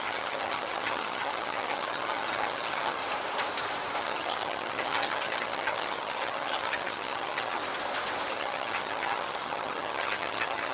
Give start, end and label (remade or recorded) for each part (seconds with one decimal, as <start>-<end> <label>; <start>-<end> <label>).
0.0-3.0 remade; 3.0-4.0 recorded; 4.0-7.6 remade; 7.6-8.3 recorded; 8.3-10.7 remade